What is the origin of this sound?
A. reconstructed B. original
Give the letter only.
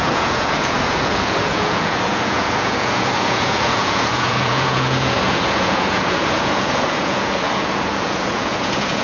A